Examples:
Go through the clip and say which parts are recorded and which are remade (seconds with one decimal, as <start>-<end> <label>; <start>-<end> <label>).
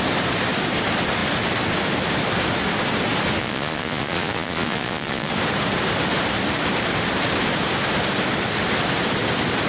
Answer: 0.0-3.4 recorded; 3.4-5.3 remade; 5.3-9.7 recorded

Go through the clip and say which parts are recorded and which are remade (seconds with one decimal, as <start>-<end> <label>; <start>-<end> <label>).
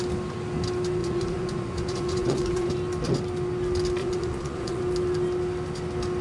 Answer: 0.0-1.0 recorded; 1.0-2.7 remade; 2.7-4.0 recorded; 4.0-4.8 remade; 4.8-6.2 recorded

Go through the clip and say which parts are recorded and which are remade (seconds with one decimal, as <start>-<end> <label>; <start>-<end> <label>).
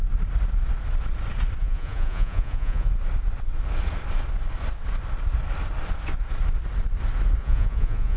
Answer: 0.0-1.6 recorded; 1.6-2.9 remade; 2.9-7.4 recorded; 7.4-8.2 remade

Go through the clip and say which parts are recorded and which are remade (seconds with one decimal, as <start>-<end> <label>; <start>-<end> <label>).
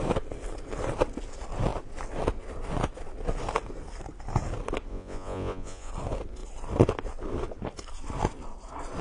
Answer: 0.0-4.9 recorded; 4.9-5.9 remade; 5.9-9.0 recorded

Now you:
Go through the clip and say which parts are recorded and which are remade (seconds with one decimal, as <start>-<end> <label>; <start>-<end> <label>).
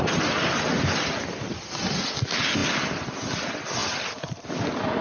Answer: 0.0-5.0 recorded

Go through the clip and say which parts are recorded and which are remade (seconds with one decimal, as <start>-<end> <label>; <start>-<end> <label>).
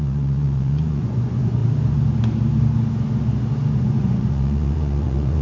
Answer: 0.0-1.6 remade; 1.6-3.7 recorded; 3.7-5.4 remade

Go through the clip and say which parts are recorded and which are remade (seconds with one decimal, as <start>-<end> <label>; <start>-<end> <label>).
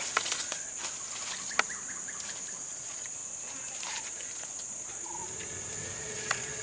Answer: 0.0-0.8 remade; 0.8-2.7 recorded; 2.7-3.2 remade; 3.2-4.0 recorded; 4.0-5.2 remade; 5.2-6.0 recorded; 6.0-6.6 remade